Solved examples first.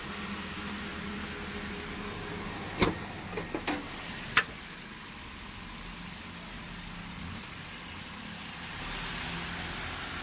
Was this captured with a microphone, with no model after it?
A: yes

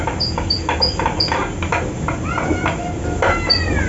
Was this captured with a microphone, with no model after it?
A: yes